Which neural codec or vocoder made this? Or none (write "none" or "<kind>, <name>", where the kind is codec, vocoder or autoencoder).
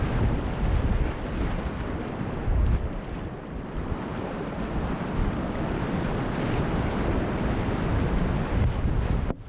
none